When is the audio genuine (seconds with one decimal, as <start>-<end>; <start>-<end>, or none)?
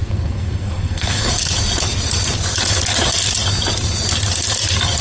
1.3-5.0